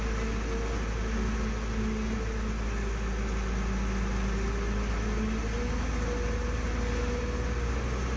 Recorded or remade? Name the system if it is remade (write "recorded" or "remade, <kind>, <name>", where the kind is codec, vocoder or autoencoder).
recorded